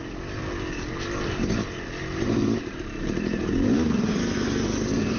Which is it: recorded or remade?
recorded